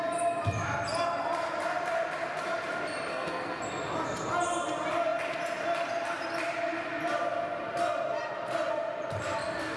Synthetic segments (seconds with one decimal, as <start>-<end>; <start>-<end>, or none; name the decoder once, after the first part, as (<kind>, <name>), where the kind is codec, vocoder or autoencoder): 3.1-3.6 (codec, SNAC)